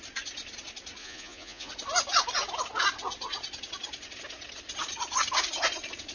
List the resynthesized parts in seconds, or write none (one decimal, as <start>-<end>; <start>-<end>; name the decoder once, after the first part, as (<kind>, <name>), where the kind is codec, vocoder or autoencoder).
1.0-1.7 (vocoder, Vocos)